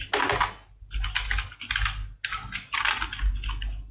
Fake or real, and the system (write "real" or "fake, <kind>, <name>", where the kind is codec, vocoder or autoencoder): real